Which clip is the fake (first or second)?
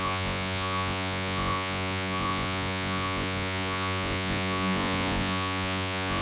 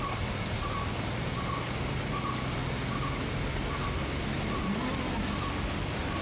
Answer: first